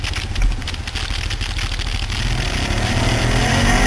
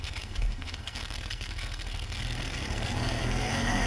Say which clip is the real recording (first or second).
first